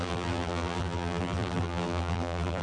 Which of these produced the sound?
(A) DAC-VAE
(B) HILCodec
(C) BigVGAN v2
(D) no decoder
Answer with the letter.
C